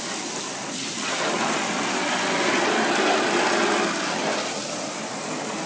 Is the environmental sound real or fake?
real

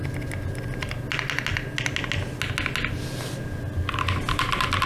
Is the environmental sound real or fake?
real